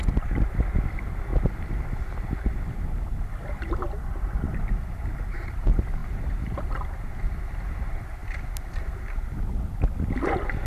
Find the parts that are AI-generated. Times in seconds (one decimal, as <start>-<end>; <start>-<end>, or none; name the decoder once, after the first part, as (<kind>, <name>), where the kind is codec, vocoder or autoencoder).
none